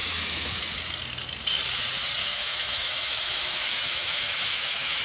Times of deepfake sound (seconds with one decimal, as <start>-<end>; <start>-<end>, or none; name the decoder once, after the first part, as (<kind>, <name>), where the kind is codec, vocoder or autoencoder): 0.0-0.6 (autoencoder, DAC-VAE); 2.2-5.0